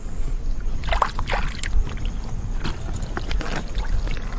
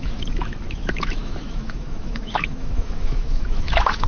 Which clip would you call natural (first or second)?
first